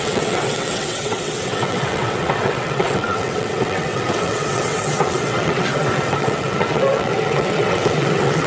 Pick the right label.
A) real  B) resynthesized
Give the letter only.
B